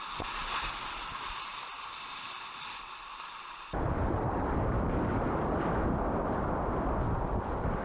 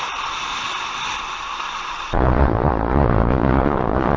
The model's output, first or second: second